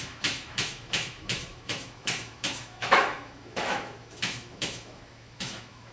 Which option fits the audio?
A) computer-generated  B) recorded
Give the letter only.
A